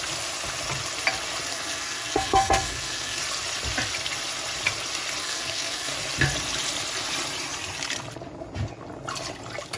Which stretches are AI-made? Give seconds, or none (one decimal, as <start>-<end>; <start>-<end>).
1.5-3.2; 5.2-5.9